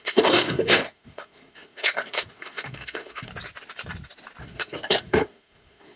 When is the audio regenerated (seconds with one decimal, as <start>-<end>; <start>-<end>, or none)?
0.0-3.3; 4.4-6.0